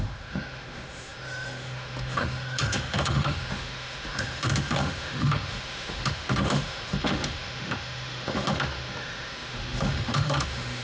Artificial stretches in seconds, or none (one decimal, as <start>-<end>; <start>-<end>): 0.0-10.8